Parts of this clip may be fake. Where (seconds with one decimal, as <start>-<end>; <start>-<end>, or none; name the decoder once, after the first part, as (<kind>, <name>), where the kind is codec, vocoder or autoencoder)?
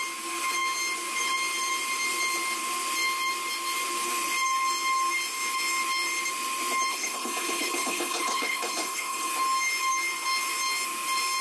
6.9-9.3 (codec, HILCodec)